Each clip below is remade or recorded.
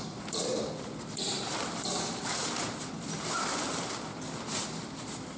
remade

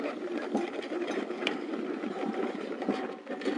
remade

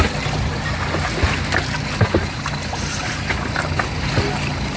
recorded